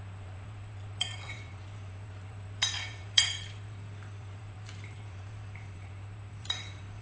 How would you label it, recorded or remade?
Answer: remade